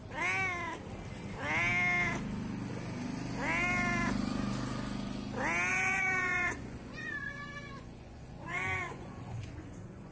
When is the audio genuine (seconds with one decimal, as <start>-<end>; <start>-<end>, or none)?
0.0-5.7